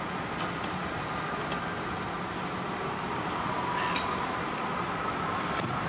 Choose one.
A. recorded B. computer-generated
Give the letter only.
A